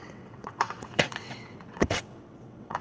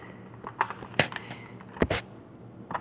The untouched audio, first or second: second